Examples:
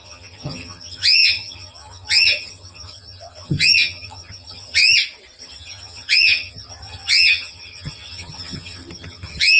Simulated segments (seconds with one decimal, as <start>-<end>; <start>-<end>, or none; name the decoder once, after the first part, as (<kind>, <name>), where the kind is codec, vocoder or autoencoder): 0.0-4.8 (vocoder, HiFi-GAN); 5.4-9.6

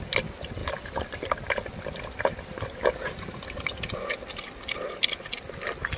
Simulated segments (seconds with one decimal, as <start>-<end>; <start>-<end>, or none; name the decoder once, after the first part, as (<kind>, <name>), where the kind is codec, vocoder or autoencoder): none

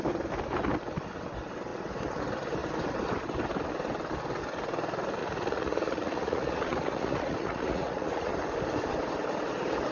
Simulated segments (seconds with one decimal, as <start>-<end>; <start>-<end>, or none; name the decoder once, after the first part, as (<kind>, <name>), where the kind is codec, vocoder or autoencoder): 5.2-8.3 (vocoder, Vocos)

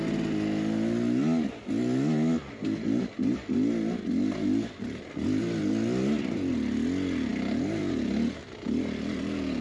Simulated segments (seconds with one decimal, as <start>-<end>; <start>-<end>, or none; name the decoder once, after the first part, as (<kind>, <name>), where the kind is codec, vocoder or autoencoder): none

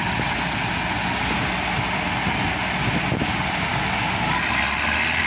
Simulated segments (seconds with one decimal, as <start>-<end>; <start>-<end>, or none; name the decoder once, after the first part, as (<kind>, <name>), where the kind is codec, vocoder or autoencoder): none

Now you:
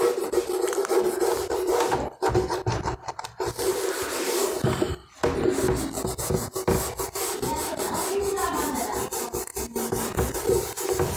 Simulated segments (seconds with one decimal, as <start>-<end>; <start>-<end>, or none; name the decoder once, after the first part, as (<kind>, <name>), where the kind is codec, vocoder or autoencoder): 0.0-4.9 (vocoder, BigVGAN v2); 6.5-11.2